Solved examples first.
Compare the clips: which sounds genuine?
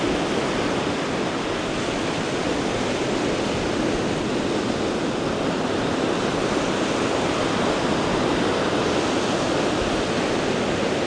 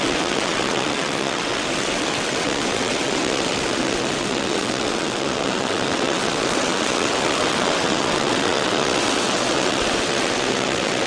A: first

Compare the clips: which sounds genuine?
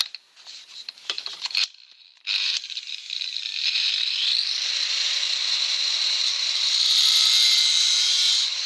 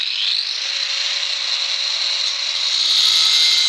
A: second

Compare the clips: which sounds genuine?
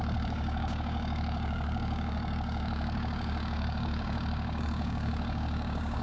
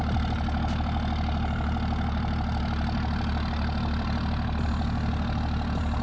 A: second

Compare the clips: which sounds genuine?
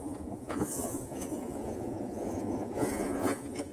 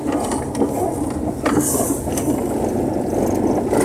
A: second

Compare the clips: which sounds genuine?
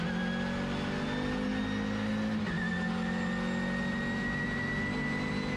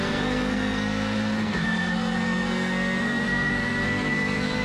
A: first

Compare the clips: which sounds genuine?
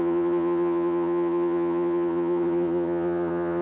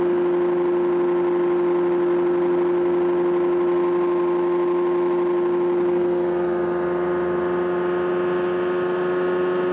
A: second